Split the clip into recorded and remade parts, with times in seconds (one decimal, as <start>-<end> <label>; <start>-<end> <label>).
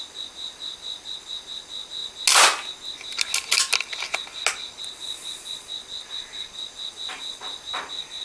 0.0-8.2 recorded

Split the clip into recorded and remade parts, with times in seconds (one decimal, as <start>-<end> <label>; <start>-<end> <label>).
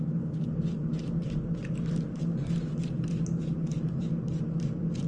0.0-5.1 recorded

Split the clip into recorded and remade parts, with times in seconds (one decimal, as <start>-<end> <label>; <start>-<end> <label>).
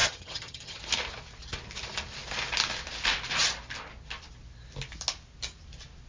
0.0-0.8 remade; 0.8-6.1 recorded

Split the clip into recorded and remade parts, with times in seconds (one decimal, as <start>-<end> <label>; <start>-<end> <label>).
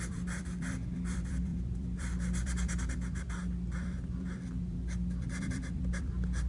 0.0-6.5 remade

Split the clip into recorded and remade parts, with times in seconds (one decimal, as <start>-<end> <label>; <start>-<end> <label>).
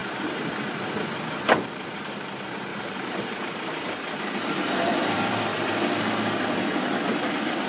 0.0-0.5 remade; 0.5-2.7 recorded; 2.7-5.7 remade; 5.7-7.7 recorded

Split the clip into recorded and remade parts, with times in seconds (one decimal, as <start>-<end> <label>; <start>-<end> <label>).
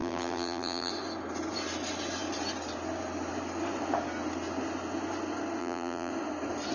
0.0-0.9 remade; 0.9-5.6 recorded; 5.6-6.1 remade; 6.1-6.7 recorded